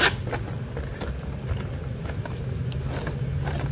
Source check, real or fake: real